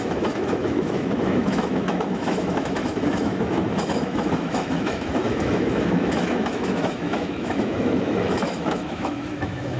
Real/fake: fake